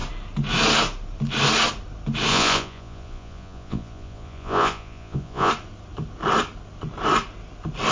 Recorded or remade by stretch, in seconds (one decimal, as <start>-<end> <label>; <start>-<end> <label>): 0.0-2.3 recorded; 2.3-5.5 remade; 5.5-7.9 recorded